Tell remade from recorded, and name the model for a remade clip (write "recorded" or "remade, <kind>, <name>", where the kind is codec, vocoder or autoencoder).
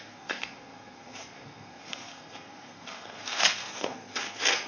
remade, codec, SNAC